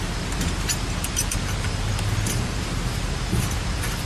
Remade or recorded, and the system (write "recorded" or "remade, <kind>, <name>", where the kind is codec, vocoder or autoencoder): remade, vocoder, BigVGAN v2